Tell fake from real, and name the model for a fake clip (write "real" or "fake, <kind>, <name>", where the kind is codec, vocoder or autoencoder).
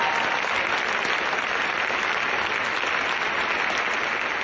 real